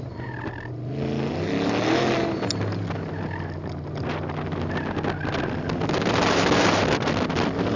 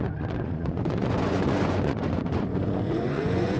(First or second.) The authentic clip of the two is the first